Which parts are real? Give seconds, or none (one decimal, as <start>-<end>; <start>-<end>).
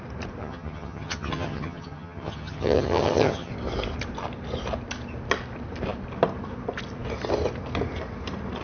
0.0-0.4; 3.5-8.6